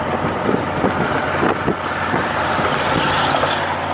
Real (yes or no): yes